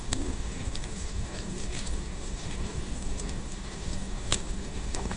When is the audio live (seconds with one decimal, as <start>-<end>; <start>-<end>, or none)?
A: none

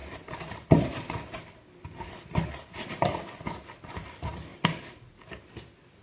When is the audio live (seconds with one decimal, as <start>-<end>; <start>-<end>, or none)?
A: 0.0-6.0

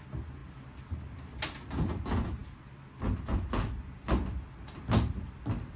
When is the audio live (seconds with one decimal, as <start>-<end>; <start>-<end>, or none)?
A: 0.0-5.8

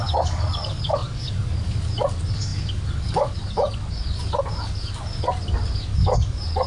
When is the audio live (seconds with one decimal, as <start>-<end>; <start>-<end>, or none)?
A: none

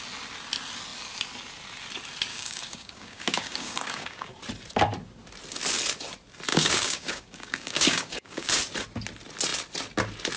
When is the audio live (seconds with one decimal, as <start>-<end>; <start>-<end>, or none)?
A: 0.0-2.3; 4.3-6.5; 8.6-10.4